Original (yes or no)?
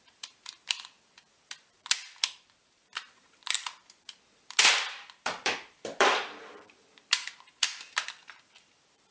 no